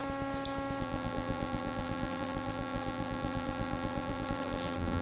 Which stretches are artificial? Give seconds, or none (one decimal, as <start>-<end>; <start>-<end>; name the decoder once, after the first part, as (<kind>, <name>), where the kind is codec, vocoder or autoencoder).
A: 0.8-5.0 (vocoder, BigVGAN v2)